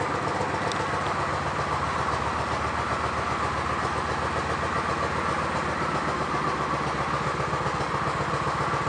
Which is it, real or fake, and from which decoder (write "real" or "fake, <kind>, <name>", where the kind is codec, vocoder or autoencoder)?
real